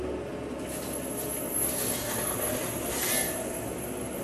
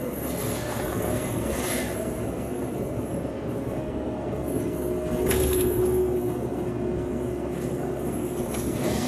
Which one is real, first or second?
first